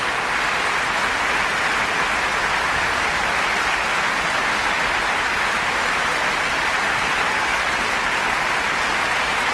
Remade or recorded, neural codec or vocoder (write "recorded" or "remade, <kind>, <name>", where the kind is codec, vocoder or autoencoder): recorded